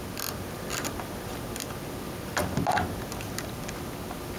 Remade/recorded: recorded